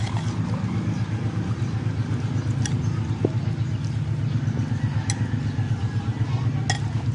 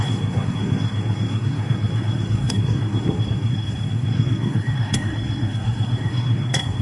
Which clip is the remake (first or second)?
second